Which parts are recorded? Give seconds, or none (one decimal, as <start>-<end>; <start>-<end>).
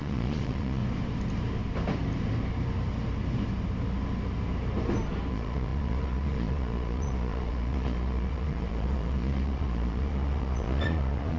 0.8-5.3